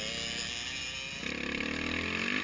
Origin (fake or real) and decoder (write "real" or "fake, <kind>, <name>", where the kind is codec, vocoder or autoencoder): real